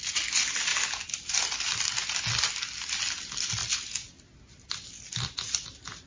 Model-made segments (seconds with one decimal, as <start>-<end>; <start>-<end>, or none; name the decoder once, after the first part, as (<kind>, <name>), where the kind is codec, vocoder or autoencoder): none